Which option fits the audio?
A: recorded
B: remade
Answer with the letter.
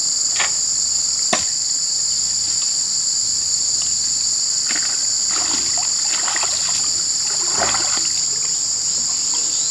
A